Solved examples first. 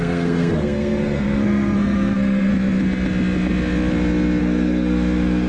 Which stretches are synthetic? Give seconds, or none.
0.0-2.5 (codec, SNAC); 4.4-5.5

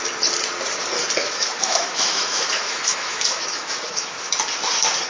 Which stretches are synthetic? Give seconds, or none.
1.2-4.3 (autoencoder, DAC-VAE)

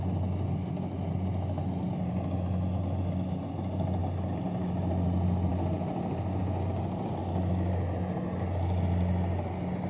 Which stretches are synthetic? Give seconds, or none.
none

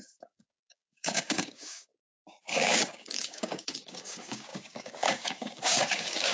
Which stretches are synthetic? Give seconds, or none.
0.0-6.3 (codec, DAC)

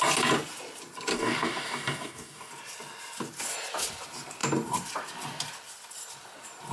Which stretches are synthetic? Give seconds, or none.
1.1-2.5 (codec, DAC)

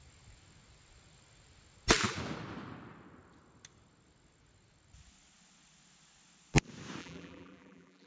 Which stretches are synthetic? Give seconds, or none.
7.0-8.1 (vocoder, BigVGAN v2)

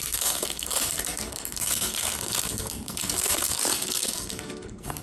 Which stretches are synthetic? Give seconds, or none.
0.0-5.0 (codec, SNAC)

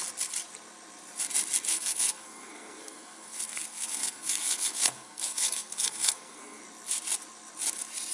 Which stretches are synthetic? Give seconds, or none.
1.7-6.6 (codec, SNAC)